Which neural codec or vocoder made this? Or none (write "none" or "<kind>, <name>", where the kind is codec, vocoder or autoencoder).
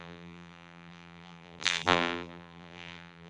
vocoder, BigVGAN v2